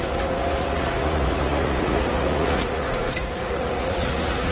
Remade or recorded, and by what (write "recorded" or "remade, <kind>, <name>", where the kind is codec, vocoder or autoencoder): remade, vocoder, Vocos